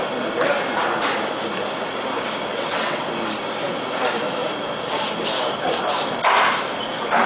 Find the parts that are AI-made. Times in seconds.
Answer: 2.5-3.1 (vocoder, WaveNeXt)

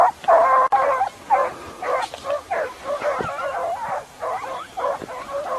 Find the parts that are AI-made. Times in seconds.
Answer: 3.6-5.6 (vocoder, BigVGAN v2)

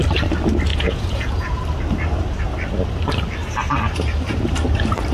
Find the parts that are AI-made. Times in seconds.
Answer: 0.7-1.6 (vocoder, Vocos)